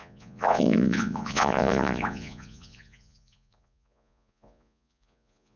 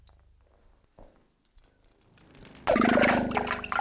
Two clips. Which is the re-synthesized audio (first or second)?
first